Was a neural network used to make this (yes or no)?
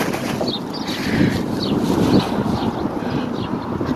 no